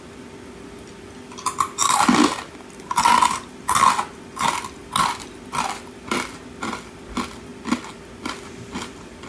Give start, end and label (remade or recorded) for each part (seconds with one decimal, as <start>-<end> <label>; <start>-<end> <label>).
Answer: 0.0-9.3 recorded